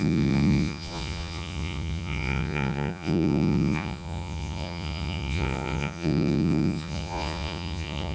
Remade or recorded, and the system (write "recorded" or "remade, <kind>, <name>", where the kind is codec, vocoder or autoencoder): remade, vocoder, Vocos